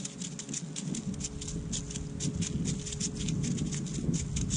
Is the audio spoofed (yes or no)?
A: no